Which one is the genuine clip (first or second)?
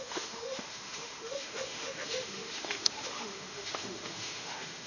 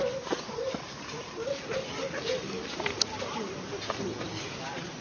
second